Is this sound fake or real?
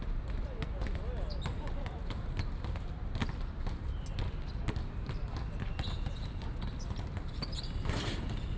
real